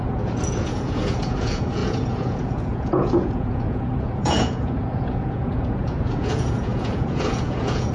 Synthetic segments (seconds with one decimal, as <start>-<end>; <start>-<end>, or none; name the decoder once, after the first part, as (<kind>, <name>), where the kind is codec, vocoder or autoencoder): 0.0-7.9 (vocoder, Vocos)

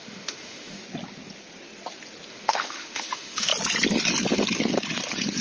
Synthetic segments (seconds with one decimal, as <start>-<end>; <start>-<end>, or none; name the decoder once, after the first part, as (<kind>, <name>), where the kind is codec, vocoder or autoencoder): 0.0-0.8 (autoencoder, DAC-VAE); 2.3-3.5